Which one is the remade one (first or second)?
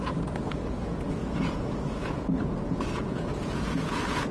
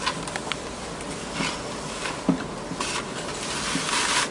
first